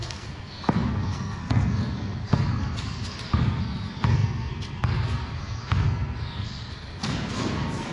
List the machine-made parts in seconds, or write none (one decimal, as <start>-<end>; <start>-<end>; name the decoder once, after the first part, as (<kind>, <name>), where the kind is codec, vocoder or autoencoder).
0.0-7.9 (codec, SNAC)